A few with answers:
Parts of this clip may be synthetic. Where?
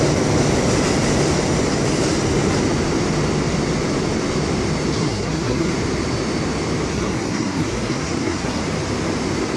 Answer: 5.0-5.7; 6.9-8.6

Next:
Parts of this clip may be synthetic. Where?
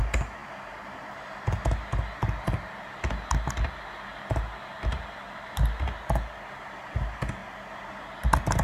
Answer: none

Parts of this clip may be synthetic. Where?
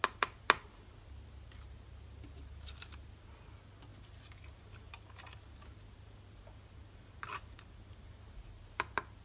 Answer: 3.9-8.1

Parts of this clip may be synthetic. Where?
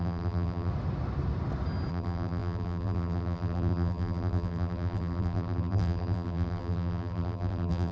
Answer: 0.0-0.7; 1.9-7.9